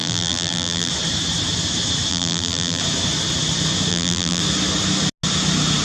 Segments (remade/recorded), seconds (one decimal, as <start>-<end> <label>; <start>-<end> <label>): 0.0-0.9 remade; 0.9-2.1 recorded; 2.1-2.8 remade; 2.8-3.9 recorded; 3.9-4.4 remade; 4.4-5.8 recorded